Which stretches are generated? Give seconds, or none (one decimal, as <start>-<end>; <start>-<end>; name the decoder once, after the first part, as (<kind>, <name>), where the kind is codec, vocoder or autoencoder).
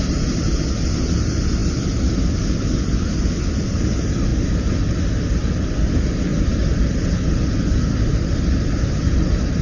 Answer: none